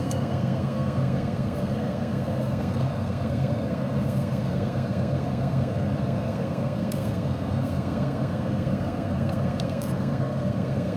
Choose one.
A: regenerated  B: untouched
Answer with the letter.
A